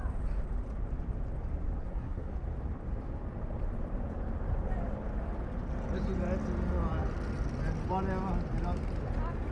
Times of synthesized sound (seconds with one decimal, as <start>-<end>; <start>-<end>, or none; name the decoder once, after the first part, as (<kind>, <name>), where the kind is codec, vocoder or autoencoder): 1.8-2.3 (codec, SNAC)